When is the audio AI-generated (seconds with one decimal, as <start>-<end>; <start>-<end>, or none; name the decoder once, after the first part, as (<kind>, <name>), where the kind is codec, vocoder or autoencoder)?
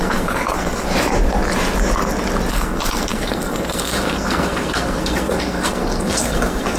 0.0-0.9 (codec, SNAC); 2.5-6.8